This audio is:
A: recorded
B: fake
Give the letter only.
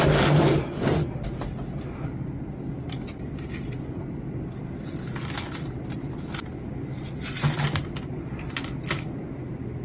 A